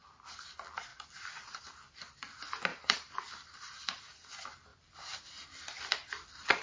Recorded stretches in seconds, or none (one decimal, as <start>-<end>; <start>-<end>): 0.0-0.9; 1.6-2.7; 4.0-4.7; 5.3-6.6